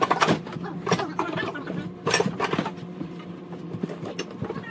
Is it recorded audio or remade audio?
remade